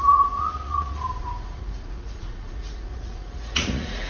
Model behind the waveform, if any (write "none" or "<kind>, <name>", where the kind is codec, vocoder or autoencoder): vocoder, Vocos